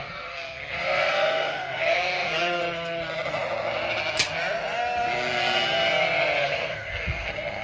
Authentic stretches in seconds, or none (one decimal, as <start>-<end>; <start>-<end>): 2.6-6.4